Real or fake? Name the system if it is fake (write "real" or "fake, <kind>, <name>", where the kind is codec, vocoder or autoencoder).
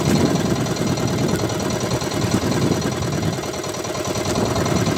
real